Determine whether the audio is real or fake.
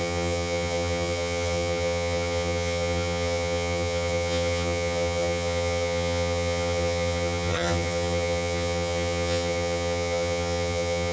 fake